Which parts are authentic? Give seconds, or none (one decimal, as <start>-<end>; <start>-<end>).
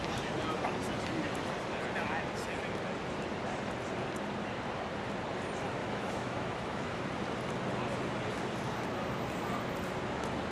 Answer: 0.0-5.8; 7.0-10.5